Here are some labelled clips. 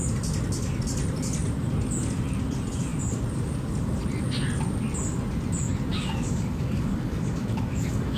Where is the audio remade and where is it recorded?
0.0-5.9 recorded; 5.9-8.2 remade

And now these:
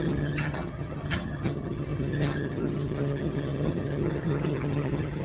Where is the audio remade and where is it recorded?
0.0-5.2 remade

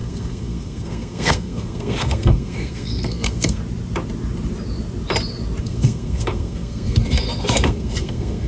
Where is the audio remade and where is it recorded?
0.0-3.6 remade; 3.6-5.6 recorded; 5.6-8.5 remade

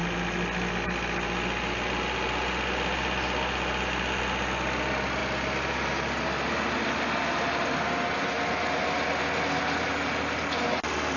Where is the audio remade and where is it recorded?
0.0-11.2 recorded

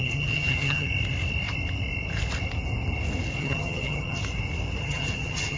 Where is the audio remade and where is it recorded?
0.0-0.9 remade; 0.9-3.4 recorded; 3.4-4.2 remade; 4.2-4.8 recorded; 4.8-5.6 remade

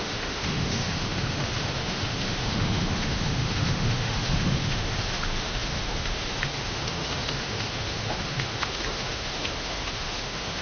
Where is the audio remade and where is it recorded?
0.0-10.6 remade

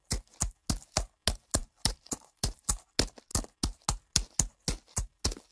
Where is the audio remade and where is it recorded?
0.0-1.6 recorded; 1.6-2.7 remade; 2.7-5.5 recorded

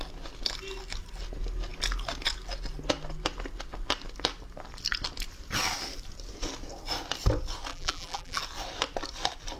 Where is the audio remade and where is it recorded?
0.0-7.7 recorded; 7.7-8.4 remade; 8.4-9.6 recorded